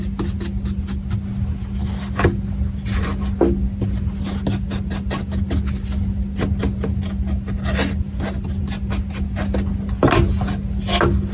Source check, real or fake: real